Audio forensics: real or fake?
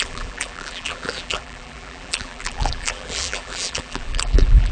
fake